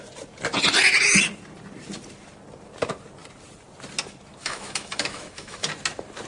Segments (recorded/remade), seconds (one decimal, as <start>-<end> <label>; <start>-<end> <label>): 0.0-4.4 recorded; 4.4-5.7 remade; 5.7-6.3 recorded